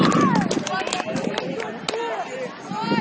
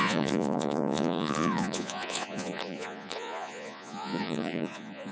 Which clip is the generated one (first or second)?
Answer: second